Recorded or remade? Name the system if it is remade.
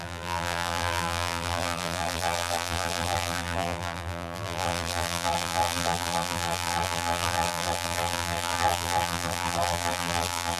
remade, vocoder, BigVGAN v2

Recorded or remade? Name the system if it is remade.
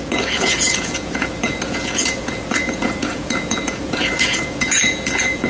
remade, vocoder, Vocos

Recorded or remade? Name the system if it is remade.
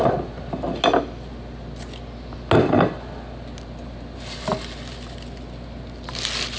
recorded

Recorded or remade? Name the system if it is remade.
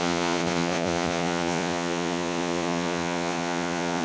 remade, vocoder, Vocos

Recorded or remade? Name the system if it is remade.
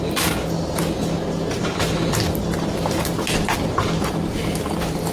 recorded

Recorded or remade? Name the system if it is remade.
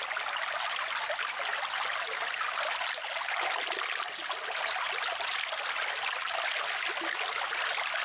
recorded